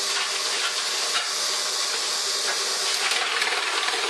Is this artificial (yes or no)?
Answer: yes